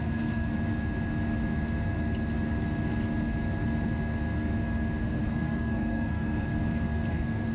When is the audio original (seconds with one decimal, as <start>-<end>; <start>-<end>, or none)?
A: 0.5-5.0; 6.5-7.1